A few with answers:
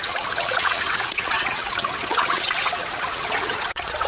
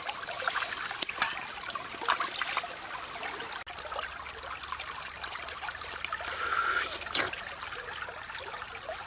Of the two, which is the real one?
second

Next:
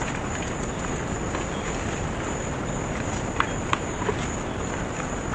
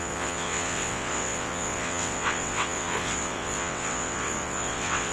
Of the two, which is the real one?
first